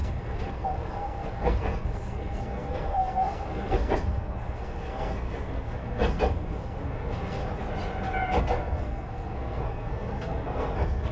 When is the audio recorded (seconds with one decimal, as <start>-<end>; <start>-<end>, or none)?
7.4-8.4